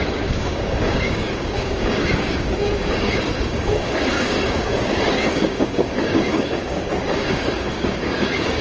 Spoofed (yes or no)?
yes